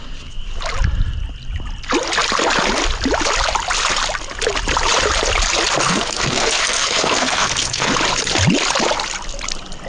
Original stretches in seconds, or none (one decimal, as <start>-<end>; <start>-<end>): 0.0-5.9; 7.9-9.9